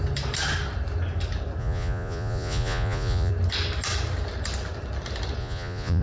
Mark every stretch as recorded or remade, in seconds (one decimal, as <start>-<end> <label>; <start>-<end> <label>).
0.0-1.6 recorded; 1.6-3.3 remade; 3.3-5.4 recorded; 5.4-6.0 remade